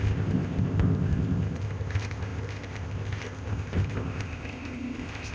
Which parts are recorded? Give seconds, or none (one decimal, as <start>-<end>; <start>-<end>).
none